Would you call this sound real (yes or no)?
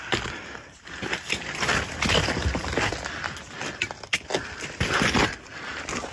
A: yes